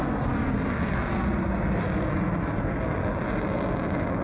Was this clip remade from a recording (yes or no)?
no